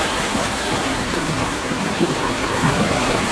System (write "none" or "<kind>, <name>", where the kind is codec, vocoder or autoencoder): codec, SNAC